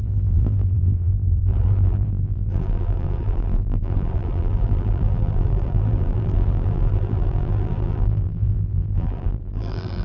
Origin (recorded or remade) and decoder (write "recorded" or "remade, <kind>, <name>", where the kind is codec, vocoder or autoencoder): remade, vocoder, BigVGAN v2